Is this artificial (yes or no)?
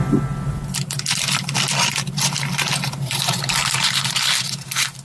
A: no